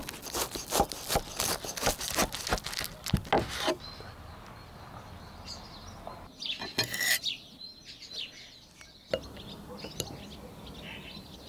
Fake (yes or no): no